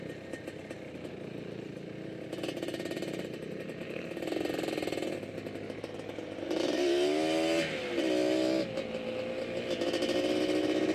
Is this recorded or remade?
recorded